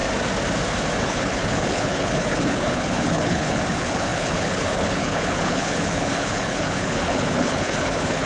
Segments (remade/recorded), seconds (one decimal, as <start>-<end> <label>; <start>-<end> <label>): 0.0-1.0 recorded; 1.0-8.3 remade